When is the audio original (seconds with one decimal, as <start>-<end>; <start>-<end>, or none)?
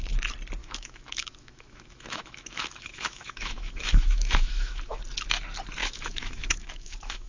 0.0-0.6; 5.0-5.8